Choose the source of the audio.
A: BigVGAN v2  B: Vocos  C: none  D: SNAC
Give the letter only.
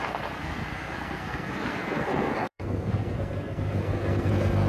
D